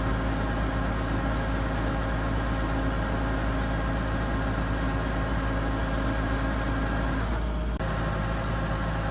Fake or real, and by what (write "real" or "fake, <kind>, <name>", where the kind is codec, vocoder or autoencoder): real